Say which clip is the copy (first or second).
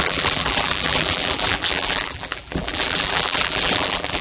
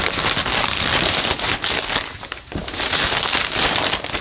first